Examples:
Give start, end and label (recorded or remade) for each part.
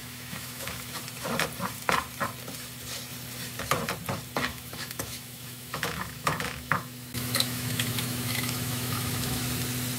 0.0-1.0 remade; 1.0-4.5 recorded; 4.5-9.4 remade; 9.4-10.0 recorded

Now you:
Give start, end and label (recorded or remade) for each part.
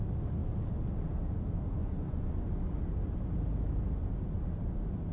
0.0-1.8 recorded; 1.8-2.5 remade; 2.5-5.1 recorded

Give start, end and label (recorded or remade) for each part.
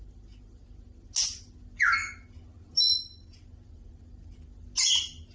0.0-5.3 recorded